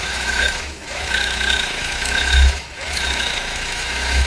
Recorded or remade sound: remade